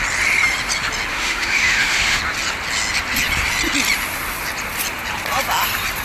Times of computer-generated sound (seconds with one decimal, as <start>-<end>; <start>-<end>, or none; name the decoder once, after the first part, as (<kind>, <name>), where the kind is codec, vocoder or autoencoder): 1.1-2.2 (autoencoder, DAC-VAE)